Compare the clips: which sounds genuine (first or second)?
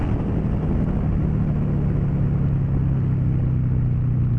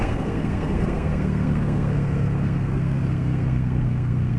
first